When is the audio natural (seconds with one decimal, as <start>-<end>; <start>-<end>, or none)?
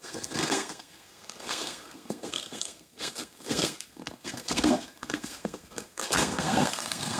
none